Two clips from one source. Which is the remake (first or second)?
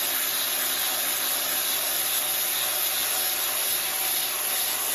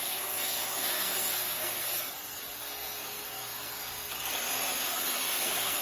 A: second